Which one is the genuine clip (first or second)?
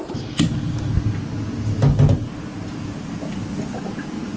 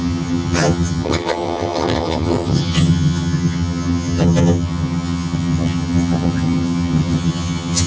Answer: first